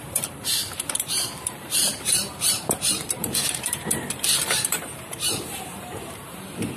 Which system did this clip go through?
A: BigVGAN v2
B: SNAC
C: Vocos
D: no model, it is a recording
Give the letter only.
A